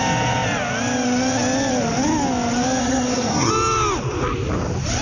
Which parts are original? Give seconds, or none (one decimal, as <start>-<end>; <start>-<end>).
0.0-2.8; 3.5-5.0